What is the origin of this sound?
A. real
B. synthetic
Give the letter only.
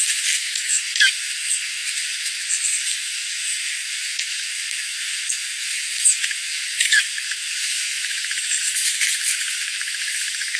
B